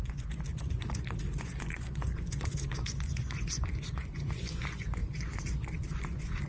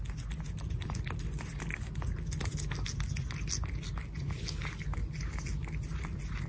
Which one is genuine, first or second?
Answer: second